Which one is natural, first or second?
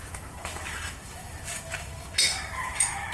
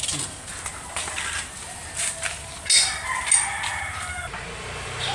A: second